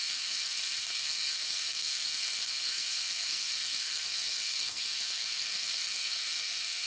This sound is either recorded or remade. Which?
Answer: remade